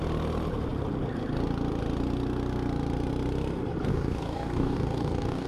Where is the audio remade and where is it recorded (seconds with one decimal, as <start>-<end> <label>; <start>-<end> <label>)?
0.0-3.9 recorded; 3.9-5.5 remade